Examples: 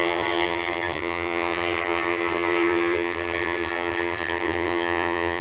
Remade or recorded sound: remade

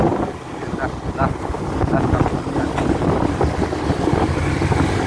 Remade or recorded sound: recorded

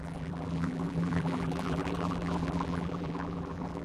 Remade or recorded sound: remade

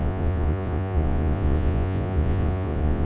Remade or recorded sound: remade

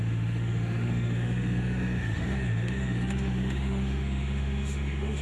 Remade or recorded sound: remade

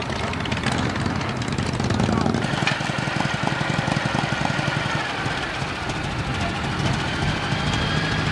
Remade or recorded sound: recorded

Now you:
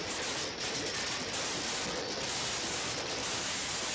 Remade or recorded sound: recorded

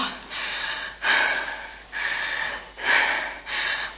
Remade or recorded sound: recorded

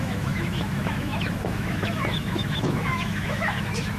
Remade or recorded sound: remade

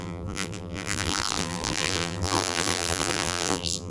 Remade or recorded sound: remade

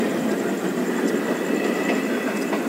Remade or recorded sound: recorded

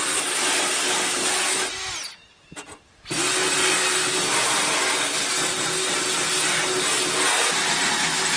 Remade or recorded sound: recorded